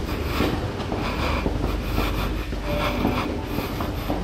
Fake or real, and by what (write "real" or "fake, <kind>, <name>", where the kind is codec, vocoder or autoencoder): real